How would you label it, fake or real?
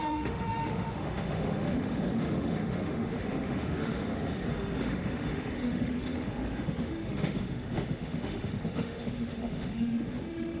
fake